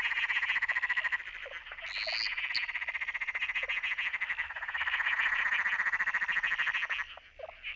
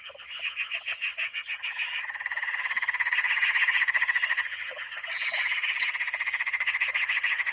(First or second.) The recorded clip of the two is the first